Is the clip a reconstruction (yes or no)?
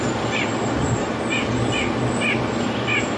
no